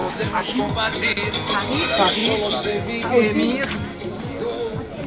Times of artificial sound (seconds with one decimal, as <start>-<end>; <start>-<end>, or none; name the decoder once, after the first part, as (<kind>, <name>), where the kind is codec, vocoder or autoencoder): 0.0-0.6 (autoencoder, DAC-VAE)

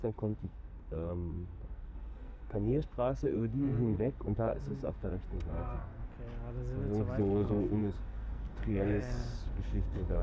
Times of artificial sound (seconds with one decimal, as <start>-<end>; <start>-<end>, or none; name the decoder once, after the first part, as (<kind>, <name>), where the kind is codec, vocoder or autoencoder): 0.0-6.0 (codec, SNAC); 7.2-10.2